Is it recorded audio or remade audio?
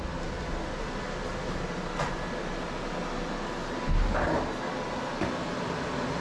recorded